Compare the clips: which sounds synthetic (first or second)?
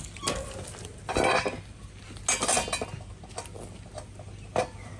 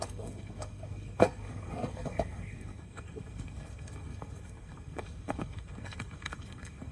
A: second